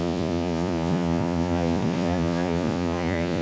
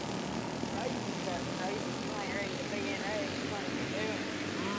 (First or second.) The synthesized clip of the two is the first